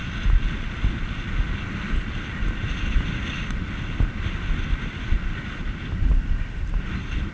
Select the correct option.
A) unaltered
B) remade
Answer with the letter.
A